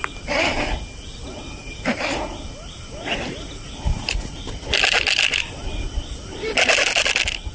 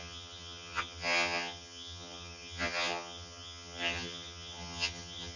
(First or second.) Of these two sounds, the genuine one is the first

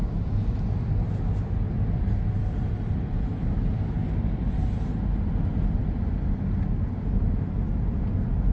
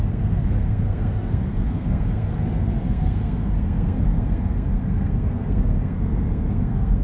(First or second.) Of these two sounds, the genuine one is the first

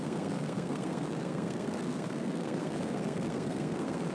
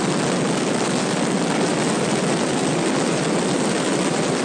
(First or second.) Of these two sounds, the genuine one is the second